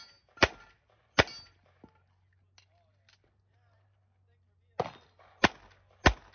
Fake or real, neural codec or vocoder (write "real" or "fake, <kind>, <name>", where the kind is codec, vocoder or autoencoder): real